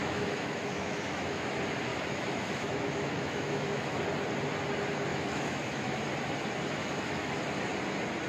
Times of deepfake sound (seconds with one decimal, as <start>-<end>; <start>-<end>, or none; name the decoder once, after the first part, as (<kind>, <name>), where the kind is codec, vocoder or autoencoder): 0.0-1.5 (autoencoder, DAC-VAE); 1.9-4.0; 5.1-6.0; 6.8-7.4